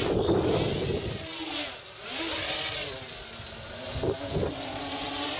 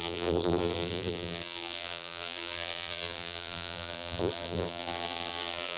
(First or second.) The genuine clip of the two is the first